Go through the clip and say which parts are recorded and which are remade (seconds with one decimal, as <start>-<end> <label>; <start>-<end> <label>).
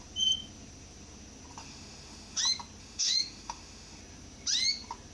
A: 0.0-1.6 recorded; 1.6-2.4 remade; 2.4-2.8 recorded; 2.8-4.0 remade; 4.0-5.1 recorded